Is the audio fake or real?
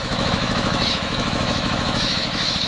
fake